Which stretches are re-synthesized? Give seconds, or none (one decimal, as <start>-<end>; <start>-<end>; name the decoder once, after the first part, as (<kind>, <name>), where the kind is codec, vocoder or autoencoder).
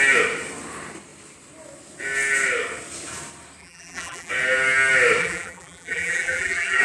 3.6-4.3 (vocoder, BigVGAN v2); 5.2-6.8